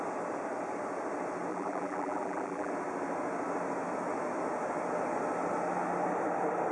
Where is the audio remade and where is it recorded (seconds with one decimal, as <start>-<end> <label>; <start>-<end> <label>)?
0.0-1.5 recorded; 1.5-2.7 remade; 2.7-6.7 recorded